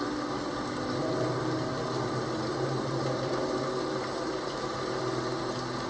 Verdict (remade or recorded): recorded